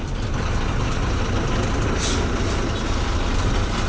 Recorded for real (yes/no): yes